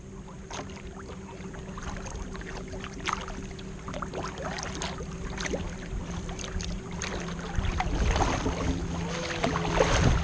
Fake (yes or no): no